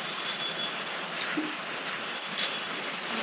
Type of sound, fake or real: real